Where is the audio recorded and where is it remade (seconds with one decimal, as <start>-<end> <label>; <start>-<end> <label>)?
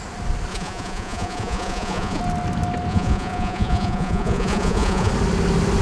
0.0-0.5 recorded; 0.5-2.2 remade; 2.2-2.9 recorded; 2.9-5.1 remade; 5.1-5.8 recorded